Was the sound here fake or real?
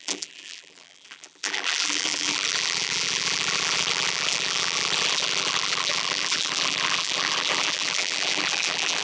fake